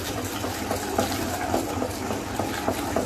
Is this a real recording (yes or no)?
yes